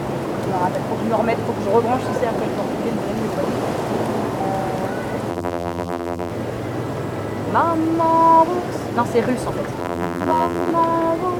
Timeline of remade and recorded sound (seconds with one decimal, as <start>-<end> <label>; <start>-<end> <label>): 0.0-5.3 recorded; 5.3-6.3 remade; 6.3-9.8 recorded; 9.8-10.7 remade; 10.7-11.4 recorded